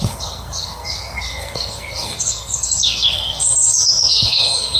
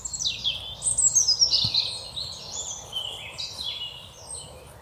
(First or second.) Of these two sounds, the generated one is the first